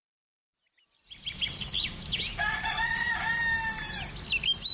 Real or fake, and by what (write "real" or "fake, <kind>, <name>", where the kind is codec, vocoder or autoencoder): real